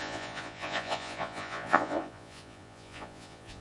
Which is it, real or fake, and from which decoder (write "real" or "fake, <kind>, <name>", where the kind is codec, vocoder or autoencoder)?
fake, vocoder, Vocos